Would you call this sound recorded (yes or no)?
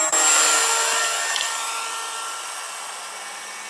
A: yes